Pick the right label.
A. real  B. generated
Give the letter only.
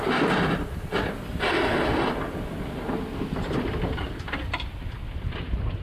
A